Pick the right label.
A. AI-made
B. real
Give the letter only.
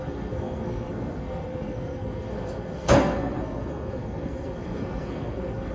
A